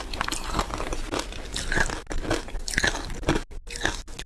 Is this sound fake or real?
real